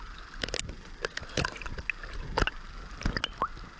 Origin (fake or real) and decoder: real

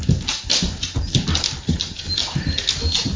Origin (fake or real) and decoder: real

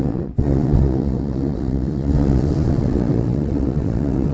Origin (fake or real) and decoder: fake, vocoder, WaveNeXt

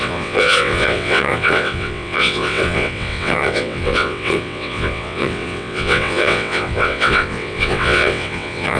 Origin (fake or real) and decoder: fake, vocoder, WaveNeXt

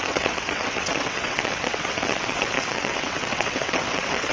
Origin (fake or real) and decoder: fake, vocoder, WaveNeXt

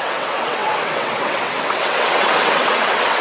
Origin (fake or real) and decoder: fake, vocoder, WaveNeXt